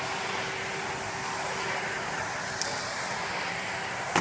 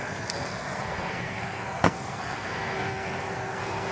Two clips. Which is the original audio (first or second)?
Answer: first